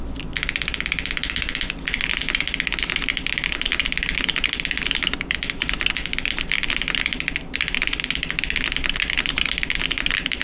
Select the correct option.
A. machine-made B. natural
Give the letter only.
B